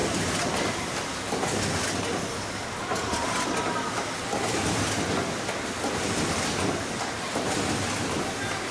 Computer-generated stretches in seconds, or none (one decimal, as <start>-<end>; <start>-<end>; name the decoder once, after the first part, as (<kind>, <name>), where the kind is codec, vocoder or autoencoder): 3.2-8.2 (vocoder, BigVGAN v2)